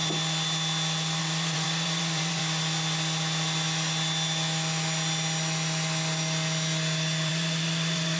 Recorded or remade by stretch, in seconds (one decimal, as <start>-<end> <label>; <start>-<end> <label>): 0.0-1.2 recorded; 1.2-2.4 remade; 2.4-7.3 recorded; 7.3-8.2 remade